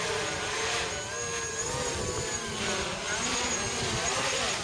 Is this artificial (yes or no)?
no